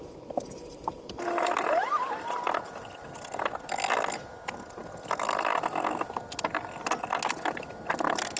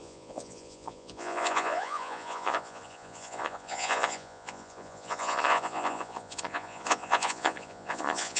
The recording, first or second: first